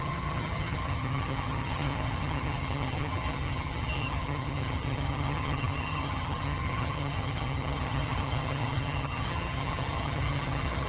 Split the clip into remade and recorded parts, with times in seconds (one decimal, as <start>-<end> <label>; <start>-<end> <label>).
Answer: 0.0-10.9 remade